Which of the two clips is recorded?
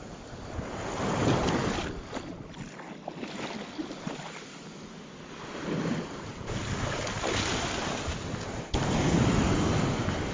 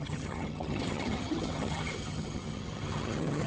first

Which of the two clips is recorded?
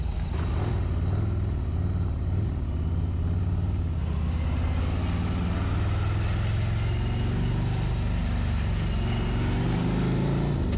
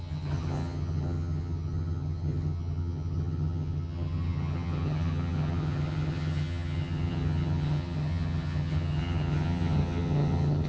first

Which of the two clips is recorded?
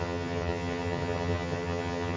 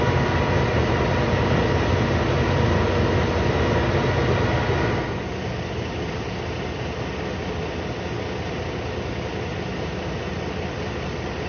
second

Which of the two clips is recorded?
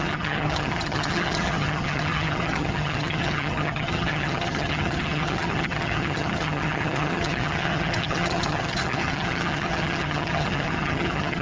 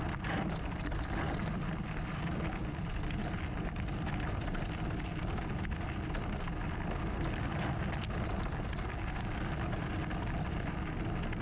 second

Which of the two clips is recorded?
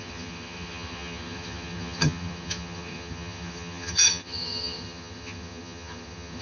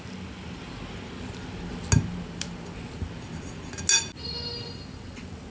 second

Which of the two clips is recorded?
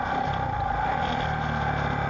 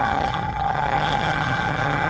first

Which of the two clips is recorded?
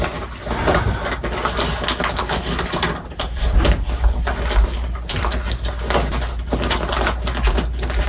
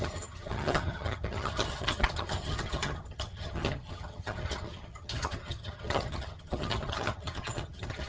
first